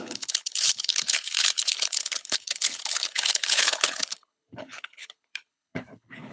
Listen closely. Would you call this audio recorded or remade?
remade